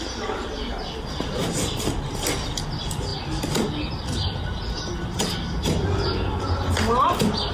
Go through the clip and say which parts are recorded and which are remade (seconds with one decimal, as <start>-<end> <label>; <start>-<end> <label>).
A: 0.0-1.4 recorded; 1.4-2.1 remade; 2.1-7.5 recorded